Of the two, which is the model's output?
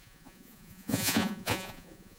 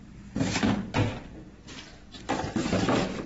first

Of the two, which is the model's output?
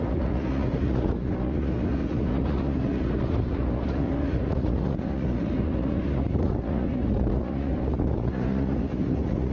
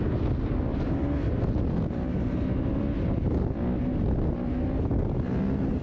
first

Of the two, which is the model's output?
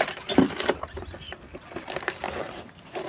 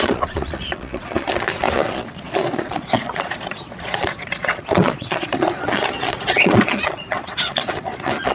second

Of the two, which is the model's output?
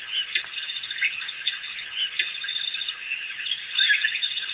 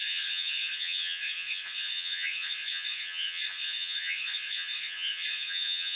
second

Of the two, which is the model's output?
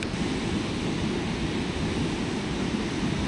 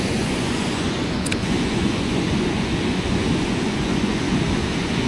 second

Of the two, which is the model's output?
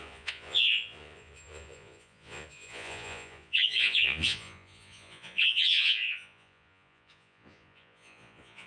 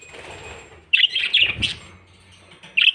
first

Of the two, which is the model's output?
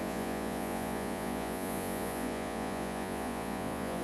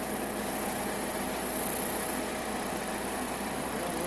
first